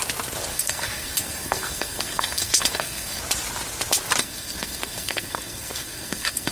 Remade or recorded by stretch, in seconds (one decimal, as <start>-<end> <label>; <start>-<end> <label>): 0.0-0.5 recorded; 0.5-3.2 remade; 3.2-4.2 recorded; 4.2-6.5 remade